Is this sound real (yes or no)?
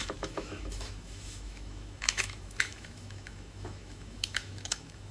no